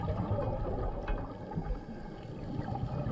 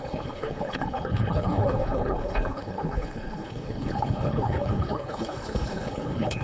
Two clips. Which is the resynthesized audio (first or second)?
second